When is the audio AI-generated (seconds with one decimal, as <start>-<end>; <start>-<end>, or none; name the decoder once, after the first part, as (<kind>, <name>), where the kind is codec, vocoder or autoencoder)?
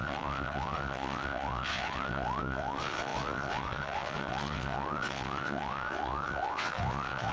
0.0-7.3 (vocoder, WaveNeXt)